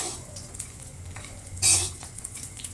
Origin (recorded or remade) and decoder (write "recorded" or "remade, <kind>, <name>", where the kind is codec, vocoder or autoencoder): remade, vocoder, Vocos